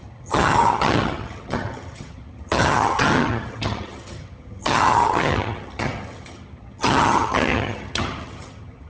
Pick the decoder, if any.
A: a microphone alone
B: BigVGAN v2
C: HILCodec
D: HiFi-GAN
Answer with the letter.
D